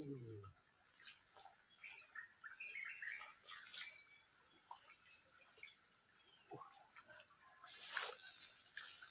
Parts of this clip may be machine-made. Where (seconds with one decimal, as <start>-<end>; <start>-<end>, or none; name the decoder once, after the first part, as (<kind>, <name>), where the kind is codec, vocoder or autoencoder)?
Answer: 0.0-1.8 (vocoder, BigVGAN v2); 3.0-3.7; 8.1-9.1